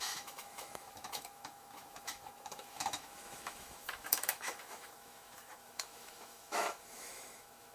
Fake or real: fake